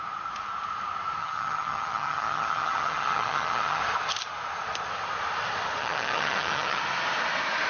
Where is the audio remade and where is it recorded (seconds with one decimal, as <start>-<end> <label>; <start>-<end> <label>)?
0.0-1.2 recorded; 1.2-3.8 remade; 3.8-5.8 recorded; 5.8-6.8 remade; 6.8-7.7 recorded